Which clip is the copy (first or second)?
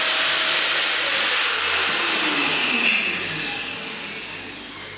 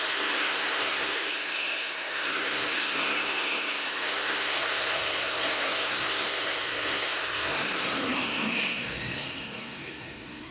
second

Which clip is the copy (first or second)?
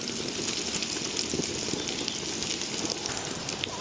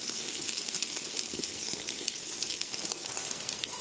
second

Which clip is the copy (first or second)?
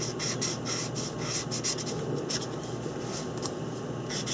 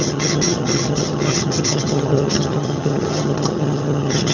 second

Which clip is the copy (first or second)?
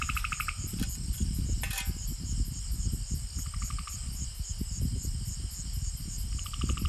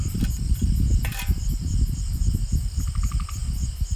second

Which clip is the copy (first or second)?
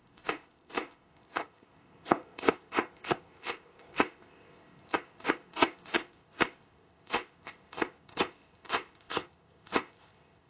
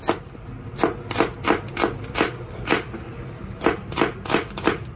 first